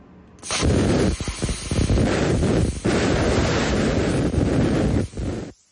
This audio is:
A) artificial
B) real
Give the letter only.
B